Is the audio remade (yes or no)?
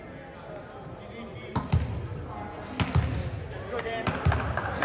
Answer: no